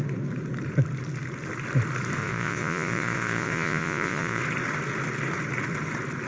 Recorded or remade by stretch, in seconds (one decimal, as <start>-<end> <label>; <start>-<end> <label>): 0.0-2.2 recorded; 2.2-4.4 remade; 4.4-6.3 recorded